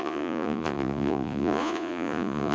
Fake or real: fake